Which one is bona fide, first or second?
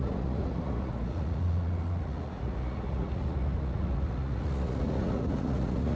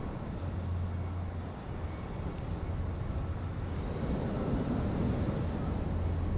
second